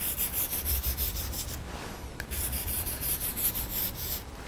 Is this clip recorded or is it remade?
remade